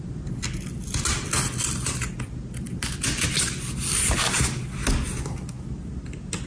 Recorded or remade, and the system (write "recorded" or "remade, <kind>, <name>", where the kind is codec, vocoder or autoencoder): recorded